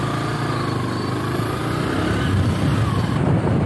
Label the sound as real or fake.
real